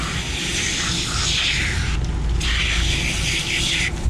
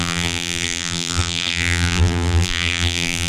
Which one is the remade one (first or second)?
second